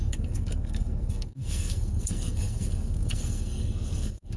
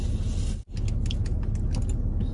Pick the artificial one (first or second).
first